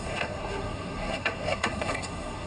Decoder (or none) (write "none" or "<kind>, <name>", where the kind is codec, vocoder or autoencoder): codec, SNAC